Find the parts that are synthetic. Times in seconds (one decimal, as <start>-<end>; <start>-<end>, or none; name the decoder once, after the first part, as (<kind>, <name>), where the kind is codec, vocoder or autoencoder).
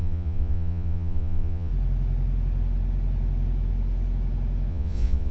0.0-1.7 (vocoder, Vocos); 4.7-5.3